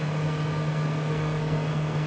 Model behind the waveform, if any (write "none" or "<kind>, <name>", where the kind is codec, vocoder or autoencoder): codec, SNAC